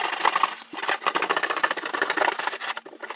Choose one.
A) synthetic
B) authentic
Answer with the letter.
B